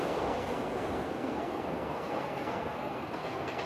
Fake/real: fake